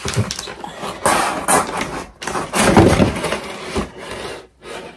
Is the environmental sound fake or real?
real